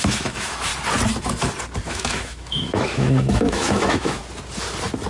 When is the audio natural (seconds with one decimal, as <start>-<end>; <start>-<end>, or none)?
0.7-1.9; 4.2-5.1